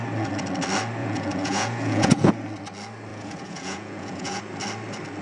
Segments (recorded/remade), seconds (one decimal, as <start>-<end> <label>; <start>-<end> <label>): 0.0-1.0 recorded; 1.0-2.3 remade; 2.3-3.1 recorded; 3.1-4.4 remade; 4.4-5.2 recorded